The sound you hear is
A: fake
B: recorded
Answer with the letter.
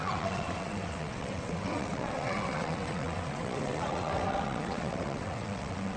A